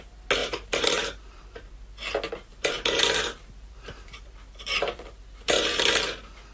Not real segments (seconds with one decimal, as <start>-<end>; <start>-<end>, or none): 0.4-1.4; 2.5-5.8